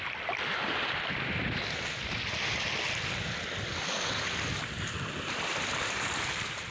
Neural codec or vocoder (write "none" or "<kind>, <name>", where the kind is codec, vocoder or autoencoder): none